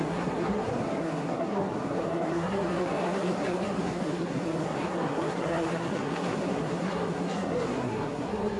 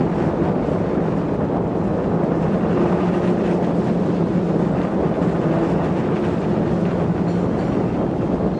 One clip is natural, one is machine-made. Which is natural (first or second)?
second